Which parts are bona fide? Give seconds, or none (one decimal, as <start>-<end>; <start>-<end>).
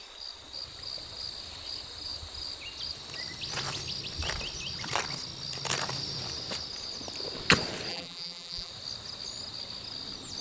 0.0-7.9; 8.7-10.4